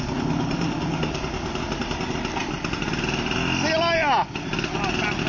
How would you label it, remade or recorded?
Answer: recorded